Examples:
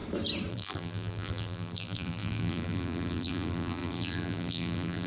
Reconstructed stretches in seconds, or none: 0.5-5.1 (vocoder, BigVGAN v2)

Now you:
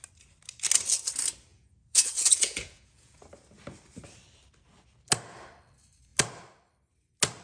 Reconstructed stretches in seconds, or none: 1.5-3.2 (vocoder, Vocos)

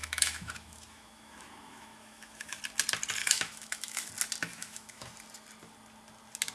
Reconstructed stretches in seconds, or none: 0.0-2.6 (autoencoder, DAC-VAE); 3.2-4.1; 4.5-5.1

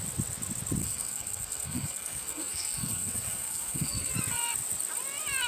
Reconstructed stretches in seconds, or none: 0.8-4.1 (codec, SNAC)